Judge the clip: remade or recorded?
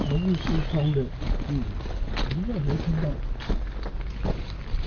recorded